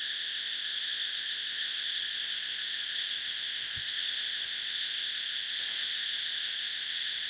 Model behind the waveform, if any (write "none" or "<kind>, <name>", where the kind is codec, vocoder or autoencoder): codec, ZipCodec